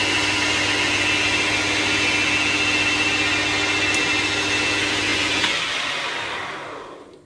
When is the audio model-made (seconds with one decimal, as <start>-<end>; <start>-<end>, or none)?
5.1-5.6